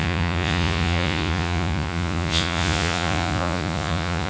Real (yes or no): no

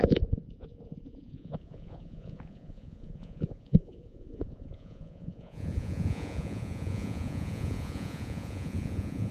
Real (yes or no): no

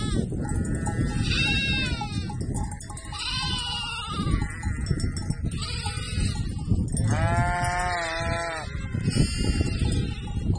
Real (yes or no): yes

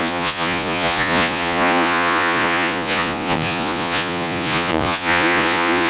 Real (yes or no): no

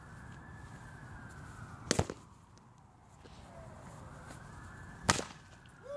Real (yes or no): yes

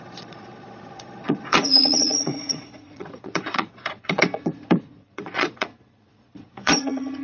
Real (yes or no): no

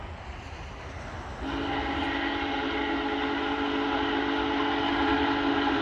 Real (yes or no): yes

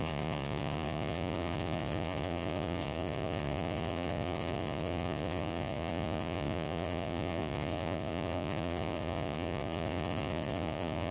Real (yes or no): no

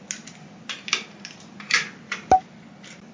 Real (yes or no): yes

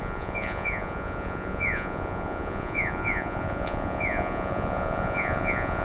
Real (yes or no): no